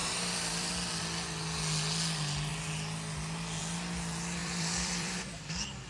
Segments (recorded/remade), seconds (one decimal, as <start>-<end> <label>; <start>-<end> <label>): 0.0-0.7 remade; 0.7-4.4 recorded; 4.4-5.3 remade; 5.3-5.9 recorded